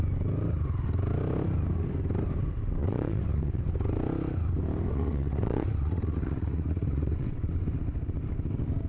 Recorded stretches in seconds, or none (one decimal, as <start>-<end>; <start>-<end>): 0.0-2.8; 3.6-4.9; 7.5-8.9